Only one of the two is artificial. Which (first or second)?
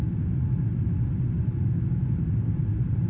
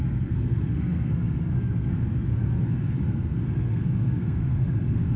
second